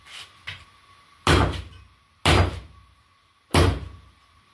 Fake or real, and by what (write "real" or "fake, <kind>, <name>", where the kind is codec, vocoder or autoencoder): real